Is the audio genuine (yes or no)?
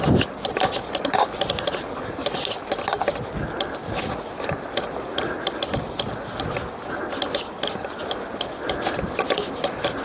yes